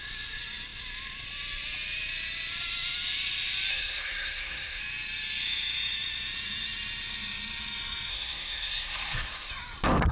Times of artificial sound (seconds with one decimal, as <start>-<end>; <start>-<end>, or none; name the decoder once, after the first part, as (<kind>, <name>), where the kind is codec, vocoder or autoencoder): 3.7-4.8 (codec, SNAC); 8.1-9.5